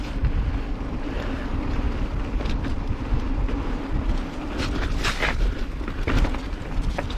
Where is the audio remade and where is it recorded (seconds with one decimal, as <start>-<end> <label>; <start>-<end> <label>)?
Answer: 0.0-7.2 recorded

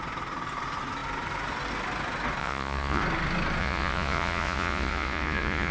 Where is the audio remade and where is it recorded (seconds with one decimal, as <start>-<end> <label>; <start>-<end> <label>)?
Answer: 0.0-2.4 recorded; 2.4-3.0 remade; 3.0-3.6 recorded; 3.6-5.7 remade

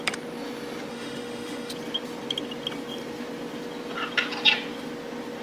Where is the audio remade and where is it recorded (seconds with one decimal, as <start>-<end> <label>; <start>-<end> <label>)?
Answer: 0.0-0.9 recorded; 0.9-1.7 remade; 1.7-5.4 recorded

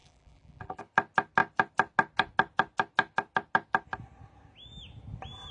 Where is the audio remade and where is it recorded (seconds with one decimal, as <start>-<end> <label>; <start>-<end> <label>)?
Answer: 0.0-0.8 remade; 0.8-5.5 recorded

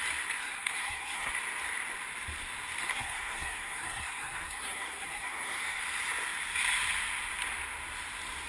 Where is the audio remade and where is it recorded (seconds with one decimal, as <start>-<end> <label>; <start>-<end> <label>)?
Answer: 0.0-0.4 recorded; 0.4-1.3 remade; 1.3-2.9 recorded; 2.9-5.8 remade; 5.8-8.5 recorded

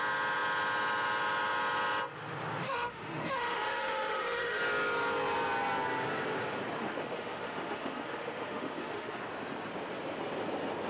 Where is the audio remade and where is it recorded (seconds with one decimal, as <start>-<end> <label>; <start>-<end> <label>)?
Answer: 0.0-2.6 recorded; 2.6-4.6 remade; 4.6-6.8 recorded; 6.8-9.2 remade; 9.2-10.9 recorded

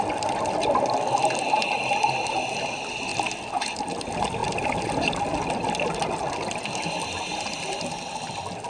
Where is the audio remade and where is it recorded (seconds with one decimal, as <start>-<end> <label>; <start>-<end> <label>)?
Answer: 0.0-8.7 recorded

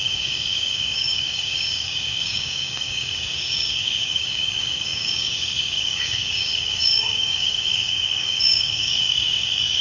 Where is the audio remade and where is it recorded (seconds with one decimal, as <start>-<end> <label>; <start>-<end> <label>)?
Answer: 0.0-9.8 remade